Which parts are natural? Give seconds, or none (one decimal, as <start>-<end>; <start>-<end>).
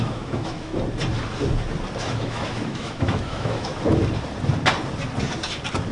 0.7-2.0; 3.7-5.9